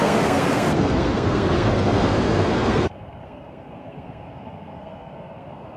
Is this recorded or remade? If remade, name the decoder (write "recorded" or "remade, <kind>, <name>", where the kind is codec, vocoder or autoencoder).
remade, codec, SNAC